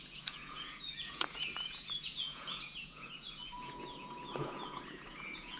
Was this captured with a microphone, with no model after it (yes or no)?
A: no